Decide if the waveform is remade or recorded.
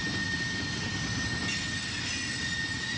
recorded